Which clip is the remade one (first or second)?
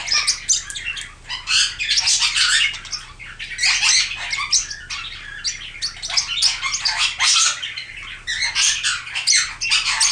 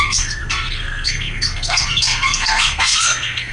second